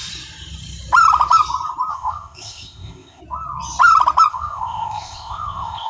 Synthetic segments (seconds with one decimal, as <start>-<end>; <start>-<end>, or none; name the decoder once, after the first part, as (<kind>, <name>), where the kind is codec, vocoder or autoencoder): 1.9-3.2 (codec, ZipCodec); 4.3-5.9